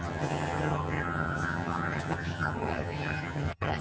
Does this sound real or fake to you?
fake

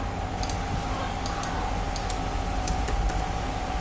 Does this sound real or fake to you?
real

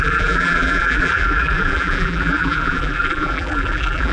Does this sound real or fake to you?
fake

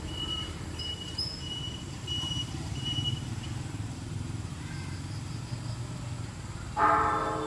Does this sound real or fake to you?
fake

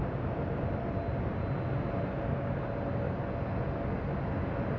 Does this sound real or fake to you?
real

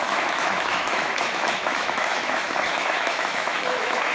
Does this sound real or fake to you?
fake